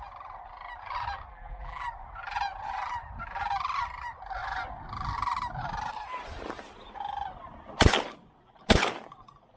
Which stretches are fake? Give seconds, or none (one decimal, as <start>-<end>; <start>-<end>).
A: 1.3-1.8

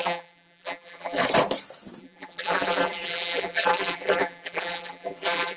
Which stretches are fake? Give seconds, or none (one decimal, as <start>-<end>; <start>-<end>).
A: 0.0-1.2; 2.0-5.6

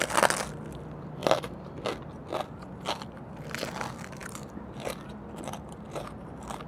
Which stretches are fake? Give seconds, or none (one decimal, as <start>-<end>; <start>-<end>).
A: 1.2-1.7